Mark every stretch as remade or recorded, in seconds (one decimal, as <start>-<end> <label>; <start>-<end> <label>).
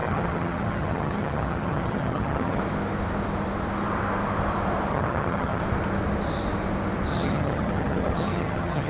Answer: 0.0-2.6 remade; 2.6-4.9 recorded; 4.9-5.6 remade; 5.6-7.1 recorded; 7.1-8.9 remade